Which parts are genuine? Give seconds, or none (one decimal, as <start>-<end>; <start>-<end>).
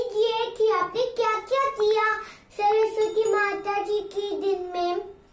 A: 0.0-5.3